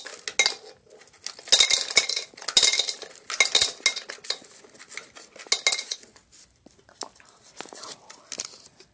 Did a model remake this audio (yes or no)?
no